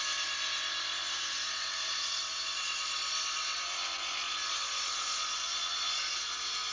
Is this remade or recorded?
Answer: recorded